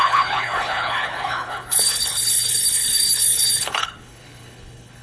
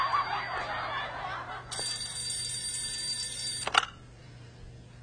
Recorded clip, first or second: second